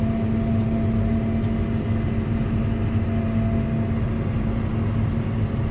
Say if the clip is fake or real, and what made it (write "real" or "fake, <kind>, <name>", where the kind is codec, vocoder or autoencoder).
real